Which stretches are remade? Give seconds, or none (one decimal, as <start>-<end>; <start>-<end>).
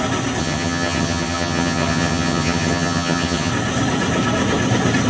0.4-3.5